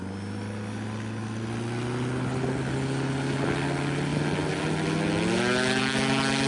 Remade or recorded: recorded